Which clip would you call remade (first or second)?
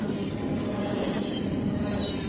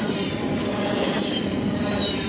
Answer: second